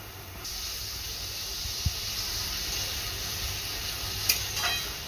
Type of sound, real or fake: real